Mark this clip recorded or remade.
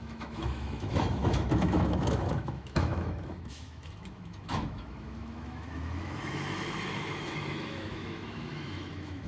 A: remade